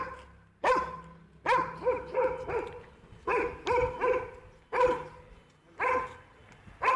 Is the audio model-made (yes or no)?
no